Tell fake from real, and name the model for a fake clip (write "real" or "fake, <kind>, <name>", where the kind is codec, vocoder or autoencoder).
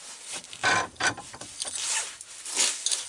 real